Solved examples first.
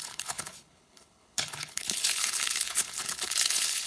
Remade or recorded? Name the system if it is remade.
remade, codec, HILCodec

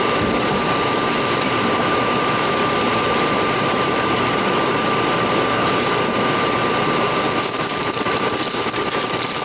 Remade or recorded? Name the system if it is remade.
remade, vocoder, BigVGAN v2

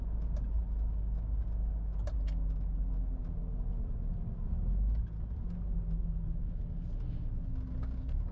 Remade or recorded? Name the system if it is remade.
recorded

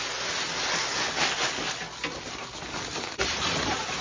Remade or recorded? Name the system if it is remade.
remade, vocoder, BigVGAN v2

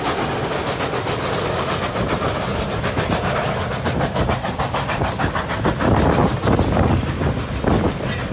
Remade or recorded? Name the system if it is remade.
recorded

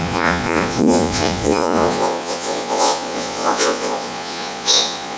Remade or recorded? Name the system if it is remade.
remade, vocoder, Vocos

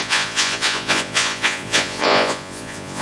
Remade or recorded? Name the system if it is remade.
remade, vocoder, Vocos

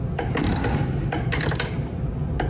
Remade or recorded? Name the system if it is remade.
recorded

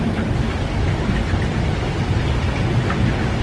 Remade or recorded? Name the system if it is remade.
recorded